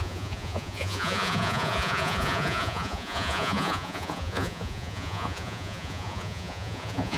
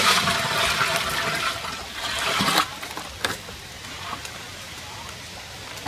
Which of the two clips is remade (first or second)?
first